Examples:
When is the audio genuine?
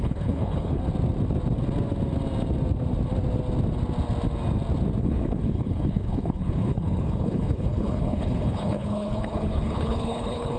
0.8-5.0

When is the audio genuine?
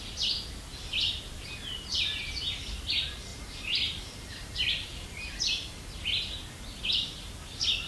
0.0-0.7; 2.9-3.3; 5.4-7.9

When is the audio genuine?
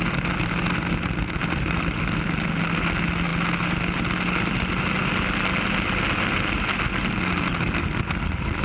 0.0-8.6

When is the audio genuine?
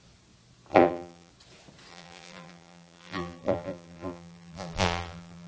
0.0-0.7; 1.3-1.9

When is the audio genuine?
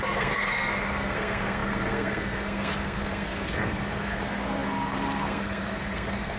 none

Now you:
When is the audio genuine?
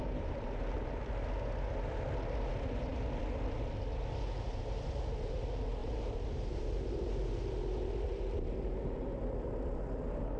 0.0-5.8; 7.2-10.4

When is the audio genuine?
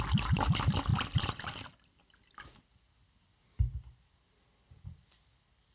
0.0-5.7